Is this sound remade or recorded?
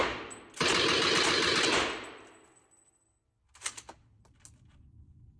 recorded